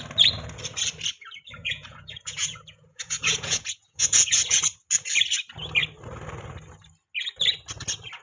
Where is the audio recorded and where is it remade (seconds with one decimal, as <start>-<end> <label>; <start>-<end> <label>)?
0.0-1.6 recorded; 1.6-4.6 remade; 4.6-8.2 recorded